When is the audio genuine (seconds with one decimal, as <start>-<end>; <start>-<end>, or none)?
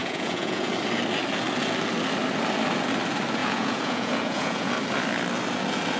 0.7-3.4; 4.7-6.0